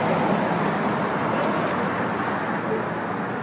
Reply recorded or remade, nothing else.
recorded